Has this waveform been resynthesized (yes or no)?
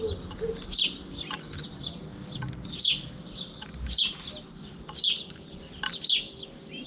no